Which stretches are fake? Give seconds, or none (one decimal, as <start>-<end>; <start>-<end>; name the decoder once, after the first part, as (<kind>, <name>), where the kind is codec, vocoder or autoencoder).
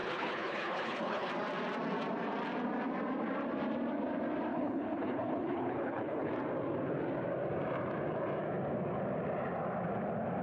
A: 0.0-1.3 (codec, HILCodec); 4.5-6.3